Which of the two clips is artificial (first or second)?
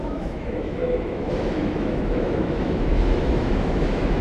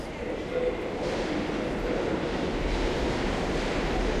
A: first